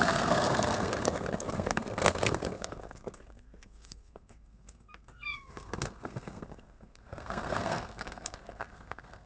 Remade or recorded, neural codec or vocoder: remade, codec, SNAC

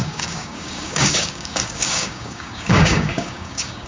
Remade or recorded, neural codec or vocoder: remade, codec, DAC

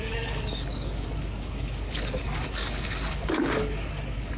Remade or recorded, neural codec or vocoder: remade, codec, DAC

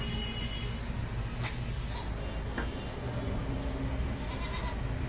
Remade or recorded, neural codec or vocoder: recorded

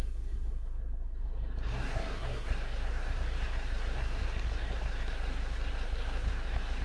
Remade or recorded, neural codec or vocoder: remade, codec, SNAC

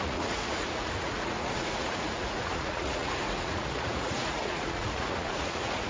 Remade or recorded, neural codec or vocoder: remade, vocoder, Vocos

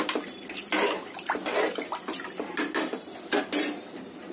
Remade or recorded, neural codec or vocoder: recorded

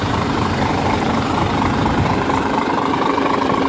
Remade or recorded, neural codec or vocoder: remade, vocoder, BigVGAN v2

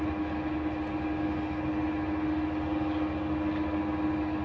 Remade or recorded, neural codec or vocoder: recorded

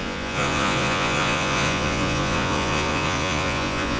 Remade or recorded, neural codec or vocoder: remade, vocoder, Vocos